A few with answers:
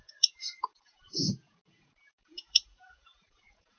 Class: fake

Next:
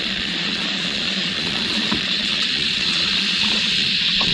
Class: fake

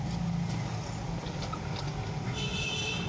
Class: real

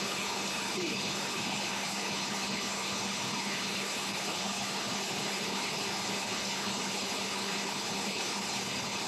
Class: fake